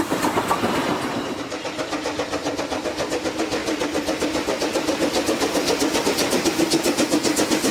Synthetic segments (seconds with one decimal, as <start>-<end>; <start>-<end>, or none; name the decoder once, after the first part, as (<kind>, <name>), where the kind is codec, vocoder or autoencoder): none